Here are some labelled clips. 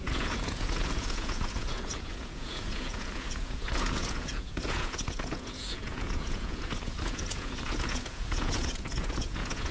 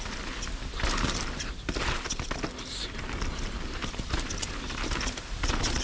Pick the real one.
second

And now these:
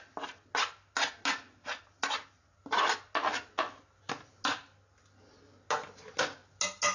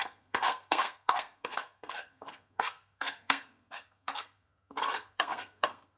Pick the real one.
first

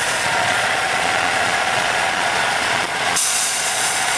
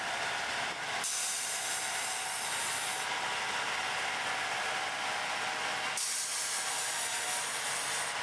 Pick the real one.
second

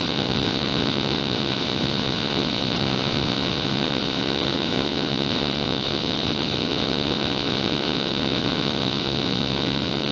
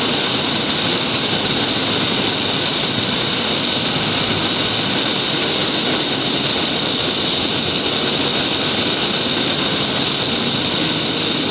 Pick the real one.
second